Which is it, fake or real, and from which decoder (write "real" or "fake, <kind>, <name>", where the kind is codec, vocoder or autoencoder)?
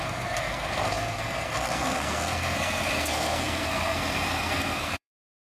fake, codec, SNAC